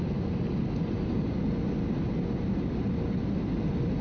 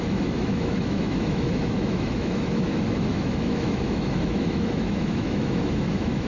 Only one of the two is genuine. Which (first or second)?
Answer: first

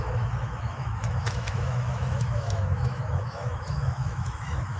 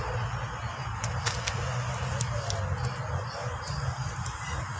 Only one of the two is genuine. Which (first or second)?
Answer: second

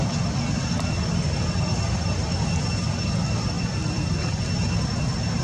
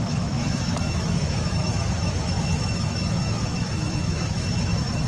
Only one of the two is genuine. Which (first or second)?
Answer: first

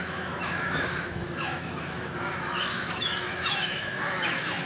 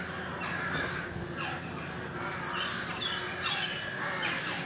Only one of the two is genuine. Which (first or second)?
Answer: second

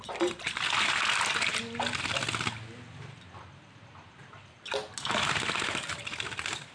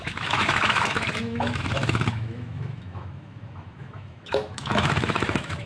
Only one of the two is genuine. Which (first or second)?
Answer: first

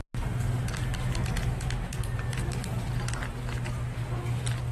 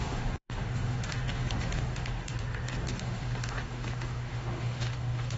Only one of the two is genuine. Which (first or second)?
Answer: first